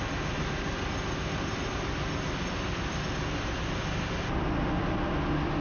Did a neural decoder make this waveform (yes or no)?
no